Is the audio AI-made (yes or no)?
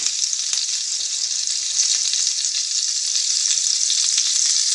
no